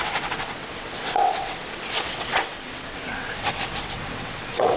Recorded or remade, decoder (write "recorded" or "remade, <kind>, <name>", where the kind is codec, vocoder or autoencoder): remade, vocoder, WaveNeXt